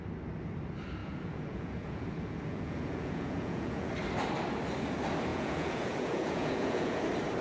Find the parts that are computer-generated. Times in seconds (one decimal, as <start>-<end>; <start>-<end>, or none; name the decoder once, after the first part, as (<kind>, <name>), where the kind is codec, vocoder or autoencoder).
1.0-3.9 (vocoder, Vocos); 5.3-7.0